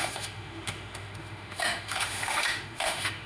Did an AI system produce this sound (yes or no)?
yes